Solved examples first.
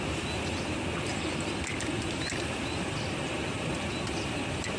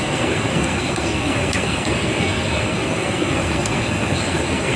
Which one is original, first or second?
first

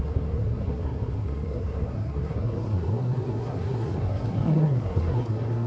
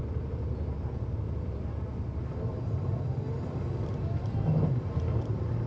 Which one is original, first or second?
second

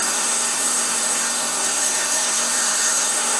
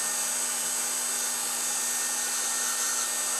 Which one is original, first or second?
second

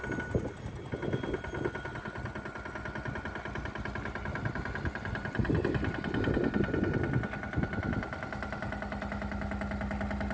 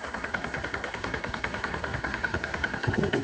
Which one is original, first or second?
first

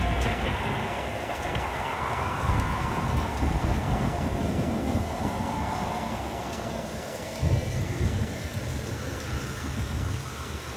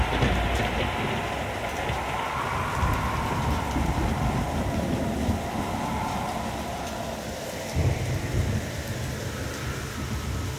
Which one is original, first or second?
second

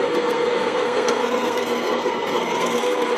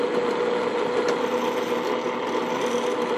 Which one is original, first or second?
second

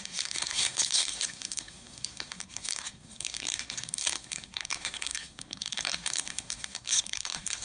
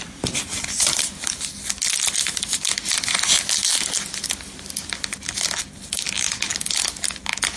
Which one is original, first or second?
second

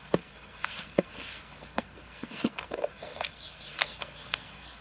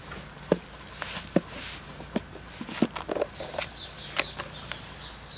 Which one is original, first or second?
second